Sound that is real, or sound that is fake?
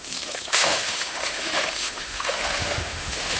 fake